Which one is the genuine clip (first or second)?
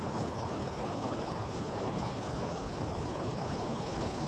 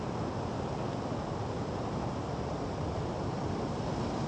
second